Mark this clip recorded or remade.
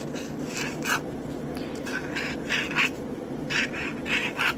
recorded